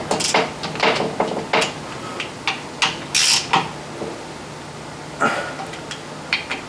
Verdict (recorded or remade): recorded